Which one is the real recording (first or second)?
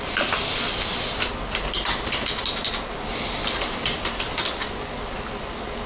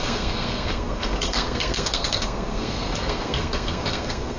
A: first